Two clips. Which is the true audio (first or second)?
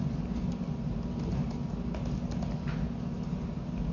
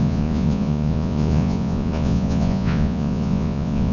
first